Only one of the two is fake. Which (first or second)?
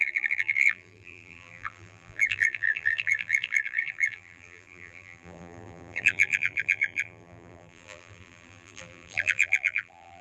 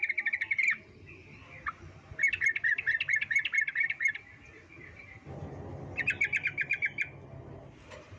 first